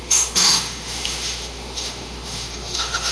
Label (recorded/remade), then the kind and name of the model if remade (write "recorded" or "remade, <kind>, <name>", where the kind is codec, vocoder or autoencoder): remade, autoencoder, DAC-VAE